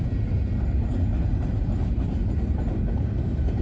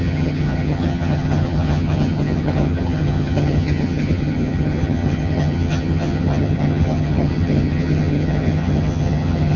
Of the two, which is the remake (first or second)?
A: second